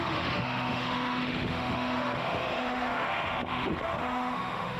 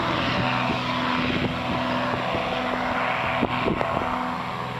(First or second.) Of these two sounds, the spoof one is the first